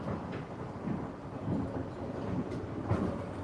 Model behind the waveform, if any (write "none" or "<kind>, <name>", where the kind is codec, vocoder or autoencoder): none